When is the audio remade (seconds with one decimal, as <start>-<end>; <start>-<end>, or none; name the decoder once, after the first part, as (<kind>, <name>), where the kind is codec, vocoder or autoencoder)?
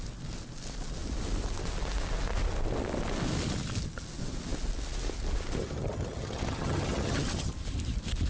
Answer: 5.6-7.5 (vocoder, HiFi-GAN)